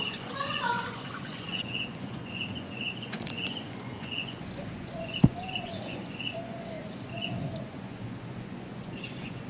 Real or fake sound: fake